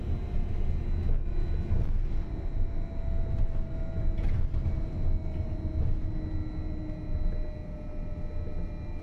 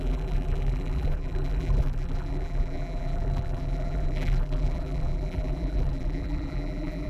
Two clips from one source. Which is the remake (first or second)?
second